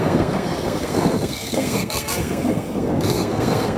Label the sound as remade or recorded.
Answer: remade